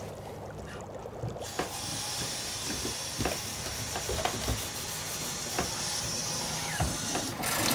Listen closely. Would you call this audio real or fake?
real